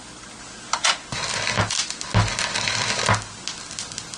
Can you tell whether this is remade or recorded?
recorded